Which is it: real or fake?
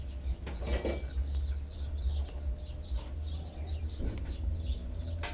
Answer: real